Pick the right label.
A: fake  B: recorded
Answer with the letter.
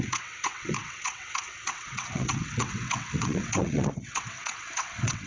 A